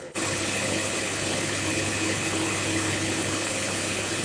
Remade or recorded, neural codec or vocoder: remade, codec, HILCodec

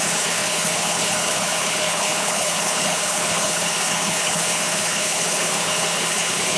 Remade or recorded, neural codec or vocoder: remade, codec, HILCodec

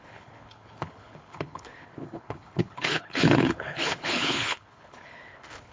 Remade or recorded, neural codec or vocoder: remade, codec, HILCodec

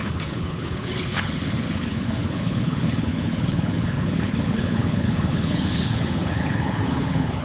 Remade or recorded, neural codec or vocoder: remade, codec, HILCodec